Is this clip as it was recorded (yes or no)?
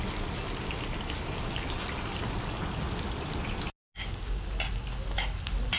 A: yes